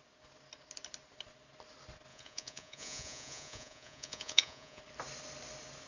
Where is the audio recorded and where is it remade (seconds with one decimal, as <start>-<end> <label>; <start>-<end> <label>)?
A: 0.0-2.1 recorded; 2.1-4.8 remade; 4.8-5.9 recorded